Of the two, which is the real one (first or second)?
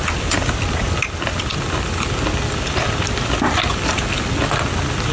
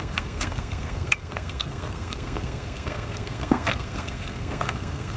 first